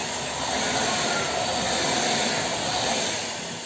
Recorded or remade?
recorded